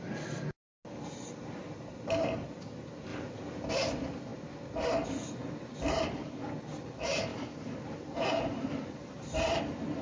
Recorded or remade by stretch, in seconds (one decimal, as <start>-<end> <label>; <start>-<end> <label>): 0.0-3.1 recorded; 3.1-3.7 remade; 3.7-7.3 recorded; 7.3-9.6 remade; 9.6-10.0 recorded